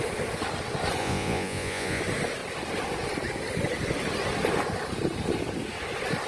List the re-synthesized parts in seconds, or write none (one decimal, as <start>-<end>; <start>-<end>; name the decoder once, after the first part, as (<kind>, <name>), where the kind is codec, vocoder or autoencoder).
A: 1.0-2.0 (vocoder, Vocos)